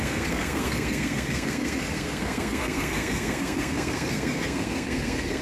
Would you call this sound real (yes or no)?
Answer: no